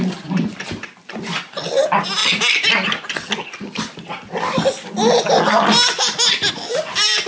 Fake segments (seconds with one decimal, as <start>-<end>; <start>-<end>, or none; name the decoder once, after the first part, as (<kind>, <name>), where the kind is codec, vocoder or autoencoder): none